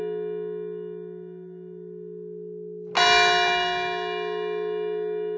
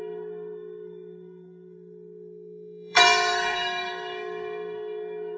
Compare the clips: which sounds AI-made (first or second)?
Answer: second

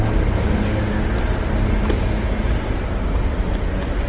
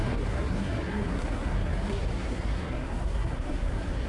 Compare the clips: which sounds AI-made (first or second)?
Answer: second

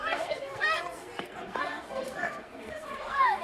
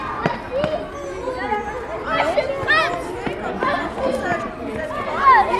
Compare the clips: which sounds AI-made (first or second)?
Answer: first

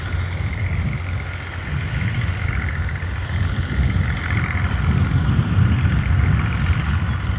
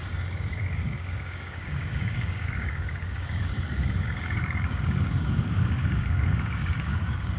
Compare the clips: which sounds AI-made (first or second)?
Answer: second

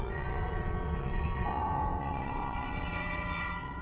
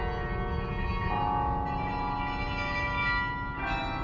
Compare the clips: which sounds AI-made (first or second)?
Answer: first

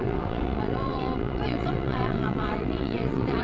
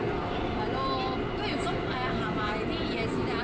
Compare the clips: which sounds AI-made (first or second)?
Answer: first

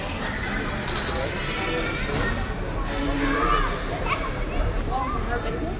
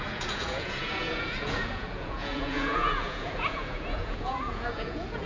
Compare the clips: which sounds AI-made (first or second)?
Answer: second